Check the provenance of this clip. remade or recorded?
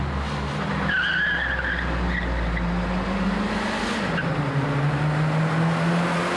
recorded